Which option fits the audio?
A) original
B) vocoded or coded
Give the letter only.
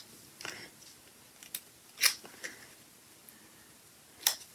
A